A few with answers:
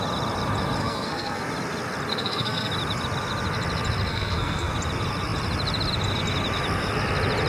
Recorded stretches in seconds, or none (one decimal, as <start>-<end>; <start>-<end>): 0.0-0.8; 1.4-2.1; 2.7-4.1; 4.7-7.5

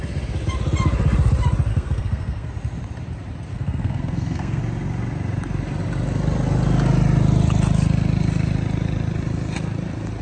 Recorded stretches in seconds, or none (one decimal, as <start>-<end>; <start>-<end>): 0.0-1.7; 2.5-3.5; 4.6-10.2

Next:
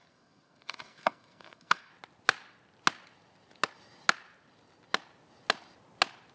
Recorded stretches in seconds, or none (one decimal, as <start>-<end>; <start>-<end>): 1.9-6.3